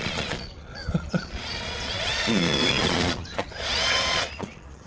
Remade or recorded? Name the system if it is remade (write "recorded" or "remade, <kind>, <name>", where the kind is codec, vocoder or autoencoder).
remade, vocoder, Vocos